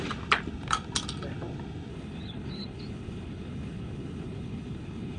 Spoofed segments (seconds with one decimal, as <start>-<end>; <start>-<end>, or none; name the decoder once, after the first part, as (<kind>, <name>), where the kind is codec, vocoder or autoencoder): 1.9-5.2 (codec, HILCodec)